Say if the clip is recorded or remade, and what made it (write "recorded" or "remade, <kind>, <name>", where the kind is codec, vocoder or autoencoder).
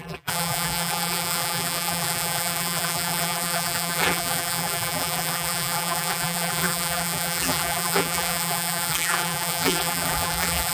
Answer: remade, vocoder, BigVGAN v2